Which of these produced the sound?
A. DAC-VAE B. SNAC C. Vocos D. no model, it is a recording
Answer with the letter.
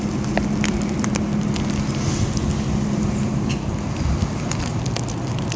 D